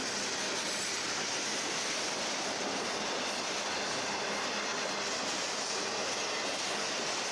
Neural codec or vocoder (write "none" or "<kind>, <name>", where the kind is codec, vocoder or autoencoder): none